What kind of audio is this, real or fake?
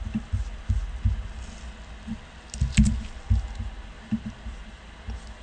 real